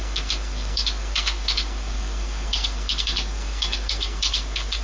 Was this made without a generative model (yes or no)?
no